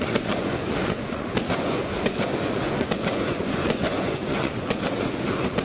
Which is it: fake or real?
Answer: fake